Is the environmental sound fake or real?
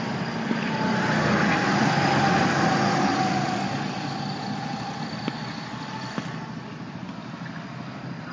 real